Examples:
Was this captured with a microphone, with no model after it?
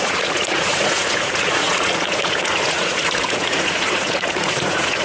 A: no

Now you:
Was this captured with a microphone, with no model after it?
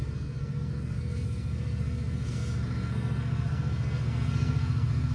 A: no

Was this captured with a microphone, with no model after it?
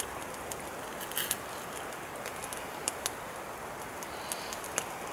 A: yes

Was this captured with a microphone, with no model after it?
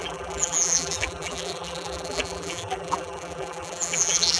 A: no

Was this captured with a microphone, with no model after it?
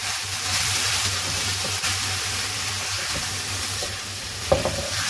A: no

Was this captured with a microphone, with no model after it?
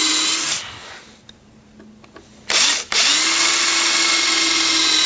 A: yes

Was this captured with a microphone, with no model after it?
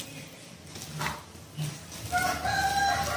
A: yes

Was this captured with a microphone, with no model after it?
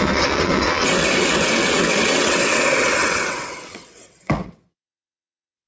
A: no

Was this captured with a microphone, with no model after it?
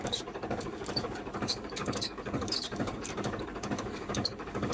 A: no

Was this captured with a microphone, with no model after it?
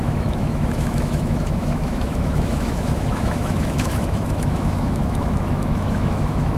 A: no